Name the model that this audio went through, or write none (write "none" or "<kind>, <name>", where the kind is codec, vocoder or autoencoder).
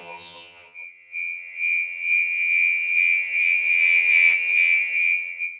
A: vocoder, HiFi-GAN